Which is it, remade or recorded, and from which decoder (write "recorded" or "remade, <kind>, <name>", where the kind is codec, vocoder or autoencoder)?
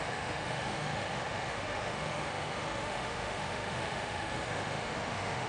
remade, autoencoder, DAC-VAE